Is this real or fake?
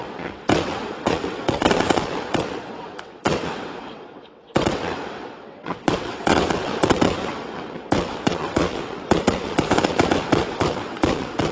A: fake